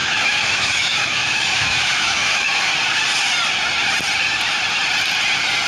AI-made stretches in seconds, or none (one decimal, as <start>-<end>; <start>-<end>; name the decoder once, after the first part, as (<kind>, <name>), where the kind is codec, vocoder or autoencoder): 0.0-2.7 (autoencoder, DAC-VAE)